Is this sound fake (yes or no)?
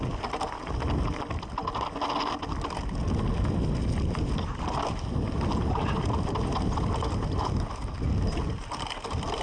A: no